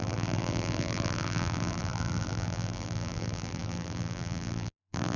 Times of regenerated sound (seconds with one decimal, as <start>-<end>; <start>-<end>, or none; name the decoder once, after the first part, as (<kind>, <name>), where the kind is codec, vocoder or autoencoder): 0.0-5.2 (vocoder, BigVGAN v2)